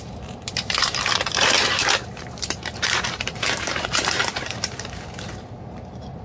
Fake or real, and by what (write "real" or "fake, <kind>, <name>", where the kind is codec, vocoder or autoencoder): fake, vocoder, BigVGAN v2